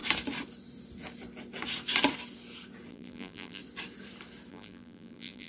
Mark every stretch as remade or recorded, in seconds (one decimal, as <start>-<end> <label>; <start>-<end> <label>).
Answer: 0.0-2.9 recorded; 2.9-3.6 remade; 3.6-4.5 recorded; 4.5-5.5 remade